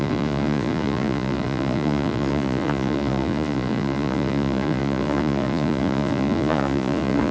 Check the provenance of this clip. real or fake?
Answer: fake